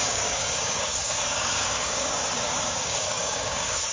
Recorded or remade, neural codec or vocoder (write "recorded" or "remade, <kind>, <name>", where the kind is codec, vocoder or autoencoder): remade, codec, DAC